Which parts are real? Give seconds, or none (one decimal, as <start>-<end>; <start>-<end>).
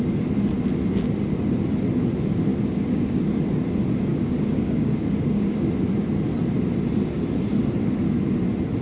0.0-2.5; 3.3-4.1; 5.7-8.8